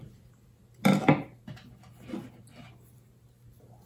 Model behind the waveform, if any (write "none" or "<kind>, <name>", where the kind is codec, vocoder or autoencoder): none